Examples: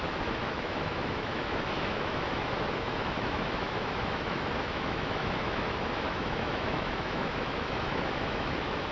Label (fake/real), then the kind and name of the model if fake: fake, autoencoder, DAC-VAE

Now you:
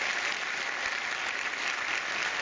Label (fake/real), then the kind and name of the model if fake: real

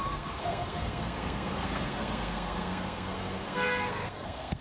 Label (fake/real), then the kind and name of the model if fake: fake, codec, SNAC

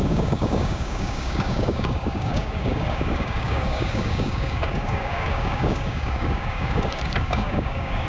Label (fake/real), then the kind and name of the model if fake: fake, codec, DAC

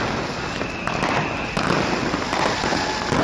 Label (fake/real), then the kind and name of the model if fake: real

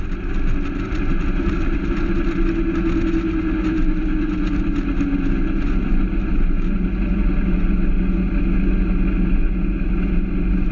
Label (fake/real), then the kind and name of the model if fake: real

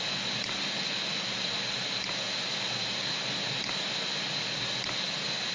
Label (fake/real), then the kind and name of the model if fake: real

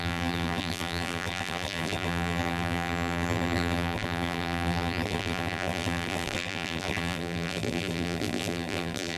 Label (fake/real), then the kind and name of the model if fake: fake, vocoder, BigVGAN v2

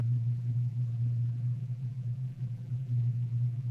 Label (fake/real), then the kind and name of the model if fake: fake, vocoder, BigVGAN v2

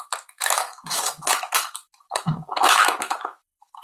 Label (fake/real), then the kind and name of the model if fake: fake, autoencoder, DAC-VAE